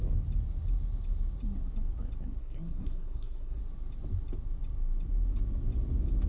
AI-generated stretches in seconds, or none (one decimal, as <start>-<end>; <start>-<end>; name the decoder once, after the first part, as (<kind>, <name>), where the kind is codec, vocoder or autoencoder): 2.4-3.6 (codec, SNAC)